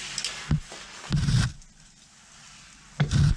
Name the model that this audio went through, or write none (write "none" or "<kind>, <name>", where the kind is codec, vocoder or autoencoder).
none